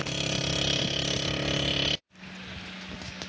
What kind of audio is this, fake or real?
real